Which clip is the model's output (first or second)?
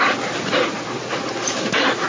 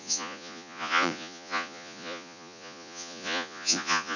second